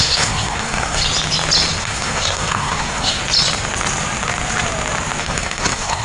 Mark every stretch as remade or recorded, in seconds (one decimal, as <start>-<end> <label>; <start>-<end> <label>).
0.0-1.0 remade; 1.0-1.8 recorded; 1.8-3.2 remade; 3.2-5.2 recorded; 5.2-6.0 remade